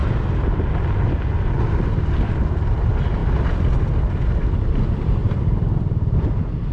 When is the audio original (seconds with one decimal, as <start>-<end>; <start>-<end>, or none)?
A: 0.0-5.2